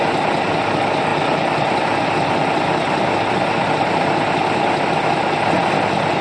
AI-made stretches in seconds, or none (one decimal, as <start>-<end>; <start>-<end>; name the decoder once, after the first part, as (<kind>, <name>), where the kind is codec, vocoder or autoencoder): none